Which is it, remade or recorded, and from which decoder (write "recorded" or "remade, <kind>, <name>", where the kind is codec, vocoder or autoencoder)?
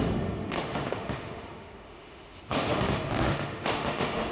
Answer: remade, autoencoder, DAC-VAE